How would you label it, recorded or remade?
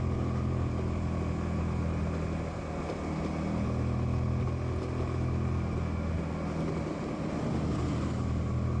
recorded